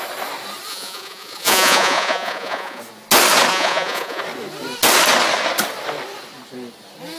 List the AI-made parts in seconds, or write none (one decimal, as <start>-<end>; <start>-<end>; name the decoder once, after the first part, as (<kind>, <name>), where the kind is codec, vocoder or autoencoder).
0.7-2.8 (vocoder, Vocos); 3.5-4.2